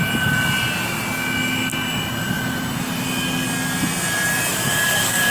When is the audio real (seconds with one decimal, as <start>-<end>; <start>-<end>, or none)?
0.0-4.5